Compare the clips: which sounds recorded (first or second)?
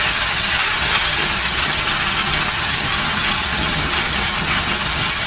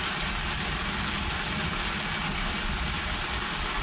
second